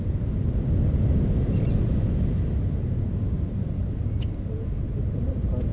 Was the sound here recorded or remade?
recorded